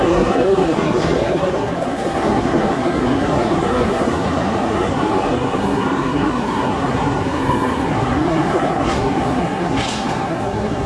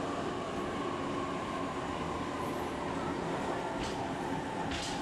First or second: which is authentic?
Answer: second